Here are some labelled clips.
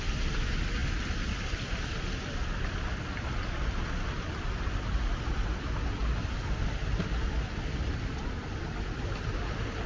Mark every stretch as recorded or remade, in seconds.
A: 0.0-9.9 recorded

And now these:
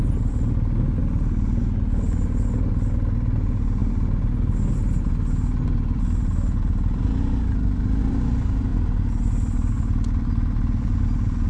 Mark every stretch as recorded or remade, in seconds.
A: 0.0-11.5 recorded

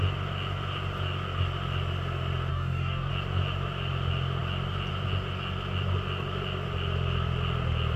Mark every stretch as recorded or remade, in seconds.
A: 0.0-2.5 recorded; 2.5-3.1 remade; 3.1-8.0 recorded

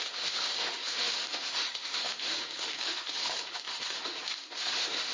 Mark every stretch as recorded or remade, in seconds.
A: 0.0-5.1 remade

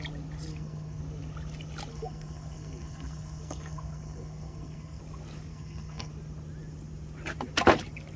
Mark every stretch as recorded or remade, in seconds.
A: 0.0-0.5 recorded; 0.5-1.0 remade; 1.0-1.9 recorded; 1.9-5.0 remade; 5.0-5.5 recorded; 5.5-6.1 remade; 6.1-8.2 recorded

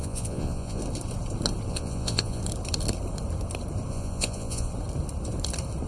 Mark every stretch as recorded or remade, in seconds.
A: 0.0-0.8 remade; 0.8-1.7 recorded; 1.7-2.4 remade; 2.4-3.9 recorded; 3.9-4.7 remade; 4.7-5.9 recorded

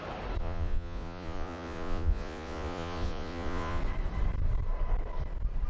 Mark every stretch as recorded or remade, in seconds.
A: 0.0-0.4 recorded; 0.4-3.8 remade; 3.8-5.7 recorded